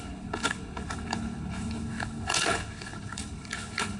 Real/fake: fake